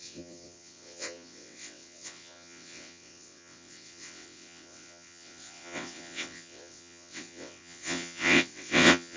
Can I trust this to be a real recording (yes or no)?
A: no